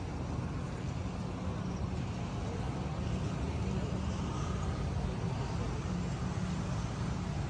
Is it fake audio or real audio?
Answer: real